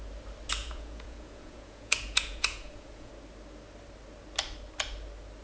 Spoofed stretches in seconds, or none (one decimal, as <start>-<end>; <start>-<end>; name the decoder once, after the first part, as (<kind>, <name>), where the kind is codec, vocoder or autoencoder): 0.6-3.1 (vocoder, Vocos)